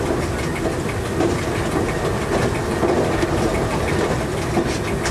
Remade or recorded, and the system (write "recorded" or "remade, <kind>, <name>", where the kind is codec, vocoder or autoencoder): recorded